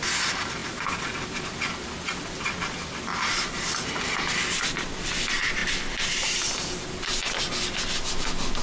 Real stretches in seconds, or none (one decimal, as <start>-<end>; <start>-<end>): 0.0-8.6